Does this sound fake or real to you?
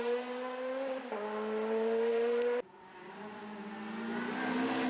real